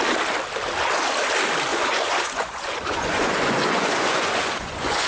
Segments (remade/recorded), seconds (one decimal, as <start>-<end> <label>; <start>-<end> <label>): 0.0-1.7 recorded; 1.7-5.1 remade